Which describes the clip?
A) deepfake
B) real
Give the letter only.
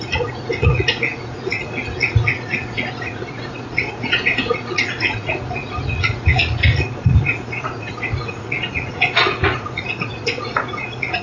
A